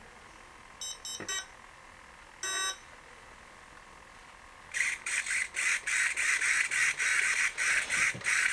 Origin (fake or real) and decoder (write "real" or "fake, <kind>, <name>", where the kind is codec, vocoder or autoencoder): real